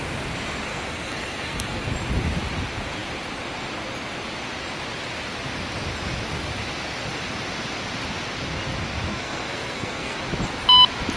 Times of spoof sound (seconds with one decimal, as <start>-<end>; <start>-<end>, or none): 0.7-1.9; 9.1-10.2